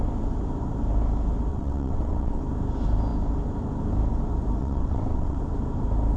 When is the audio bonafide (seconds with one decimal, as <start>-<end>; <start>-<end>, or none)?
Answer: 0.0-1.5; 2.4-4.6; 5.4-6.2